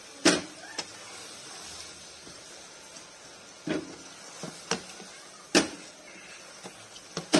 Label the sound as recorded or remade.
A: recorded